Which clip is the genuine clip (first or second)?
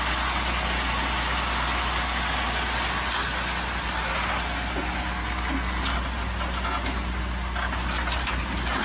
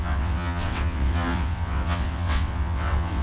first